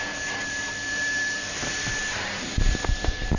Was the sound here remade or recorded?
remade